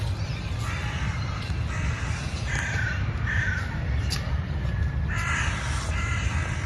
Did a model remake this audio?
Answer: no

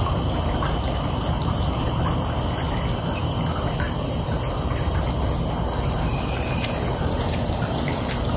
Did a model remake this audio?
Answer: yes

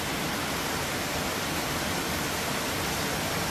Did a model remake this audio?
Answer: no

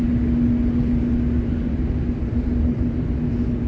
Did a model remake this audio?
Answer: no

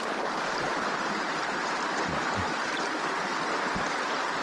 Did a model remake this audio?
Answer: yes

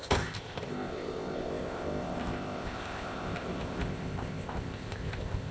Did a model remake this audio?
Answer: yes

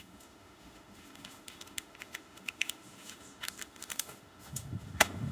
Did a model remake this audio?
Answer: yes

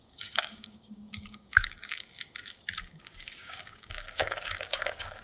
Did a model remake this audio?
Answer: yes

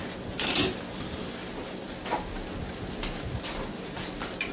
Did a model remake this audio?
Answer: no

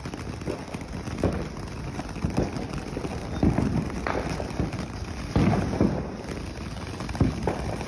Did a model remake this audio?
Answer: no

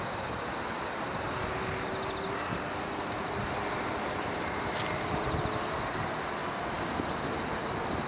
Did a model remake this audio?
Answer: no